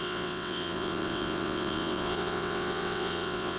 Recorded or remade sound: remade